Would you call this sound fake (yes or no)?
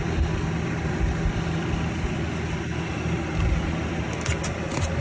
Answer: no